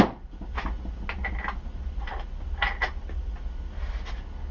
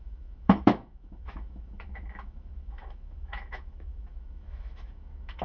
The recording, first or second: first